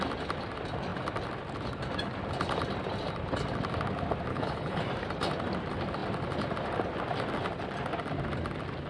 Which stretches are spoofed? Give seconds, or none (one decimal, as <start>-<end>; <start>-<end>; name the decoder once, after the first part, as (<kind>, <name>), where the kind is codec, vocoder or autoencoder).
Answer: 4.3-4.8 (codec, HILCodec)